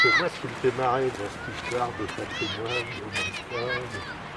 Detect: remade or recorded recorded